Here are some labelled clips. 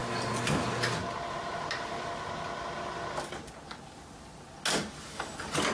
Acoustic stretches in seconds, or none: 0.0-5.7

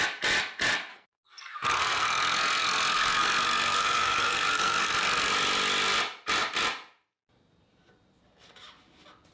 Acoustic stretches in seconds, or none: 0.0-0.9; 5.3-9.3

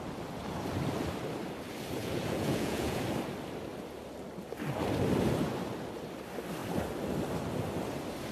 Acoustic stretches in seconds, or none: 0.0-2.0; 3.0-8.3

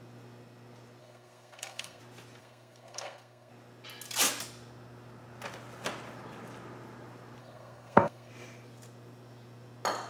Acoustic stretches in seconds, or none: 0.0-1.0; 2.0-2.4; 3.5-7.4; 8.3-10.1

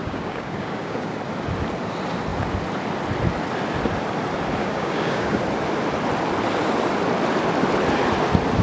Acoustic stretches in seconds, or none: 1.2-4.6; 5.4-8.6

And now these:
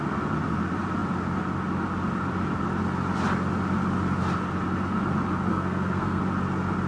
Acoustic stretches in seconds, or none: 0.0-5.5; 6.2-6.9

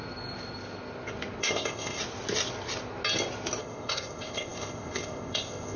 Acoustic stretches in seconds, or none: 0.0-1.4; 2.0-3.6

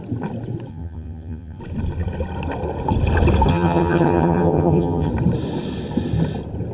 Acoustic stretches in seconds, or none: 0.0-0.7; 1.6-3.5; 5.1-6.7